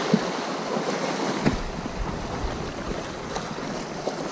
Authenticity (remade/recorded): recorded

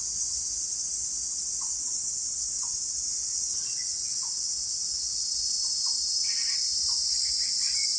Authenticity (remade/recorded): remade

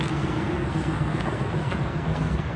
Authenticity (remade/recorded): remade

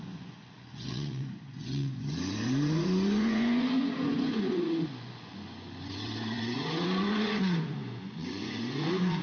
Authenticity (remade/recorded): remade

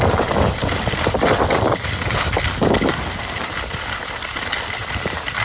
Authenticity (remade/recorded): recorded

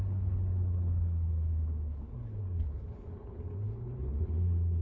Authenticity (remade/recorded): remade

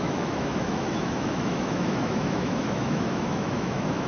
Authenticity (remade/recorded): remade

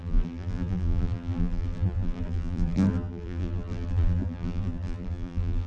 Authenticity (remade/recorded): remade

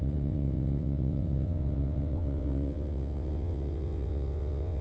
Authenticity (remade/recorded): remade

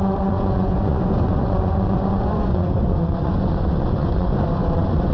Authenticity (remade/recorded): remade